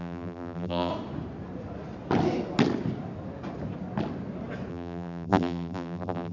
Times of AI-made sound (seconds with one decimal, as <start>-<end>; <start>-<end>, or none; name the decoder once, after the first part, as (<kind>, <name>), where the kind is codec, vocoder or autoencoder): 0.0-0.9 (vocoder, BigVGAN v2); 4.7-6.3